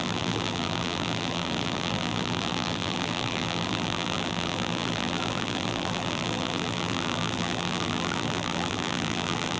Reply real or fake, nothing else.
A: fake